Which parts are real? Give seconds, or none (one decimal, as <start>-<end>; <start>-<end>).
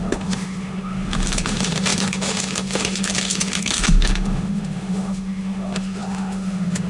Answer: none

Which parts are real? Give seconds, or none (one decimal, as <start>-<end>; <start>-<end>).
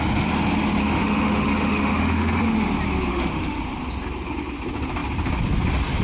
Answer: 0.0-0.8; 2.4-3.1; 3.6-6.0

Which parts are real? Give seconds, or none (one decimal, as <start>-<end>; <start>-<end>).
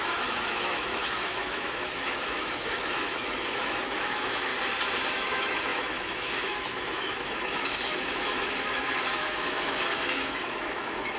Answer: 4.5-5.1